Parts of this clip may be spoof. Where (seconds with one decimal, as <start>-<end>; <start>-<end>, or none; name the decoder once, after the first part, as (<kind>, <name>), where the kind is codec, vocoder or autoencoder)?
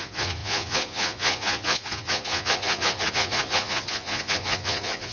0.0-5.1 (vocoder, Vocos)